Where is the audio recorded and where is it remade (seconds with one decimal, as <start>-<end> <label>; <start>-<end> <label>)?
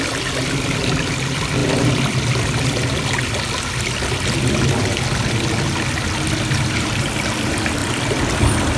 0.0-8.8 recorded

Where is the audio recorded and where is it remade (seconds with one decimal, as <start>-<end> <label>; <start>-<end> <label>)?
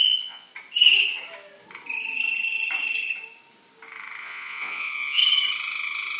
0.0-0.5 remade; 0.5-4.2 recorded; 4.2-5.2 remade; 5.2-6.2 recorded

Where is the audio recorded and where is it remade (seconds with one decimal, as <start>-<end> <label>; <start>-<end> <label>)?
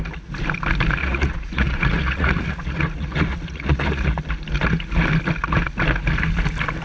0.0-1.0 recorded; 1.0-4.2 remade; 4.2-6.8 recorded